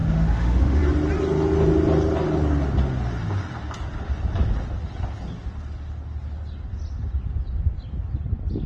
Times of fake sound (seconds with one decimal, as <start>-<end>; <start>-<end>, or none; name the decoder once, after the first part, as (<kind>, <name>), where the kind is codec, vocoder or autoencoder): 0.0-0.8 (autoencoder, DAC-VAE)